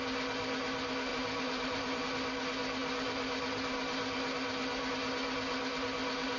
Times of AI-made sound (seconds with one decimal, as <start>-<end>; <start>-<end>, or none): 1.1-2.0